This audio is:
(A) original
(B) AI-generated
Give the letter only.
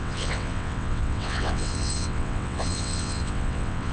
B